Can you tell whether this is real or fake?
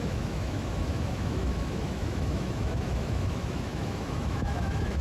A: fake